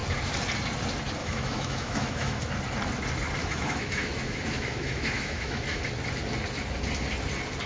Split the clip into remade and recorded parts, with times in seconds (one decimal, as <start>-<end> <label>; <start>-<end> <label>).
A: 0.0-1.2 recorded; 1.2-2.4 remade; 2.4-3.4 recorded; 3.4-5.8 remade; 5.8-7.7 recorded